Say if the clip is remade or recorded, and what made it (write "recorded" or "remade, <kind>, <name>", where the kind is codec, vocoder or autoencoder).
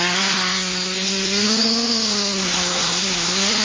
remade, codec, SNAC